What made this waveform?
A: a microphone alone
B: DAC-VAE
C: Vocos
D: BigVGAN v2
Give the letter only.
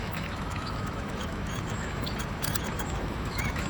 B